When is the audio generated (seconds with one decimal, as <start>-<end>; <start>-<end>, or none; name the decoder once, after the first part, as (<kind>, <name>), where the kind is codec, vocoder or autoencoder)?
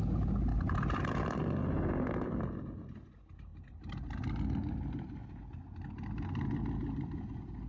0.5-2.4 (vocoder, BigVGAN v2); 3.5-4.3